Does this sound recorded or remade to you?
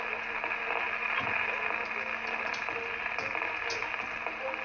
recorded